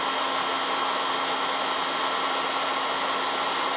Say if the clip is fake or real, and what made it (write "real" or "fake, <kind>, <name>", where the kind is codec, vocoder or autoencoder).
real